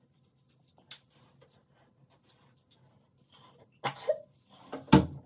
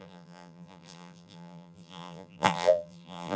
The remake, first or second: second